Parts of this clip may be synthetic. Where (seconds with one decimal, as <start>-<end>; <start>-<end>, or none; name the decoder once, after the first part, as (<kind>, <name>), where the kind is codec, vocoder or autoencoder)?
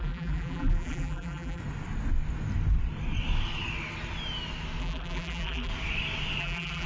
0.0-1.6 (vocoder, BigVGAN v2); 4.8-5.7; 6.4-6.9